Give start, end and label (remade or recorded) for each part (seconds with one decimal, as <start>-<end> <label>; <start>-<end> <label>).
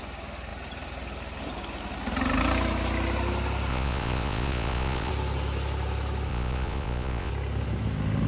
0.0-3.7 recorded; 3.7-5.1 remade; 5.1-6.3 recorded; 6.3-7.3 remade; 7.3-8.3 recorded